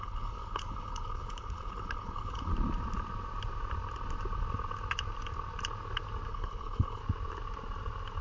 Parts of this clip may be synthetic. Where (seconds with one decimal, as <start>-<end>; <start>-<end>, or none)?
0.0-2.5; 6.3-7.0